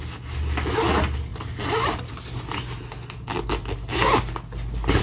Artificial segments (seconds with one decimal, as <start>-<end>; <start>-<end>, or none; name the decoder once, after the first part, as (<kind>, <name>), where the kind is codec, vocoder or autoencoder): none